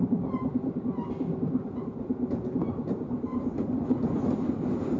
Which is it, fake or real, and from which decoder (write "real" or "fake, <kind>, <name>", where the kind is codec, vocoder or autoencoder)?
fake, vocoder, BigVGAN v2